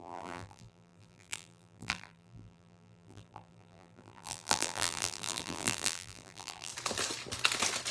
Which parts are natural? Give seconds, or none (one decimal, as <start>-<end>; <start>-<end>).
6.7-7.9